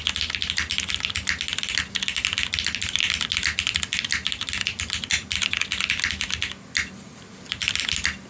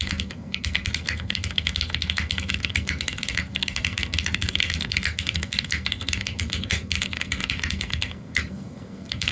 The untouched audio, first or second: first